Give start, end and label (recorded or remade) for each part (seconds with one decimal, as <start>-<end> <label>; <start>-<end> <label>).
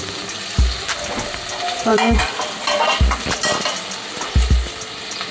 0.0-1.9 recorded; 1.9-5.3 remade